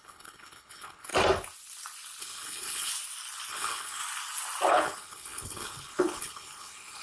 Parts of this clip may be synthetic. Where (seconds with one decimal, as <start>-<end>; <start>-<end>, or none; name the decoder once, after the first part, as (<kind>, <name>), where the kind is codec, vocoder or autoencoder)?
0.0-1.1 (codec, HILCodec); 2.2-2.9; 3.5-4.0; 4.7-7.0